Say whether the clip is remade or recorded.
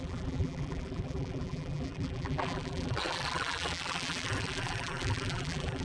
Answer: remade